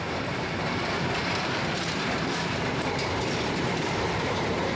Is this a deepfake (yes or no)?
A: yes